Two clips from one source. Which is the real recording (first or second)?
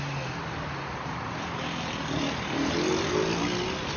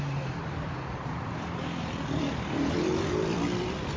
first